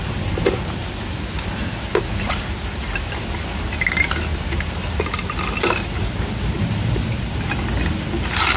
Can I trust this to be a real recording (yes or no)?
yes